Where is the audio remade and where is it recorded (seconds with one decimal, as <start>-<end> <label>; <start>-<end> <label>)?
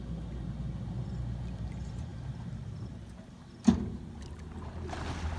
0.0-5.4 recorded